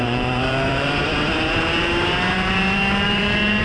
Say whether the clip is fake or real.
fake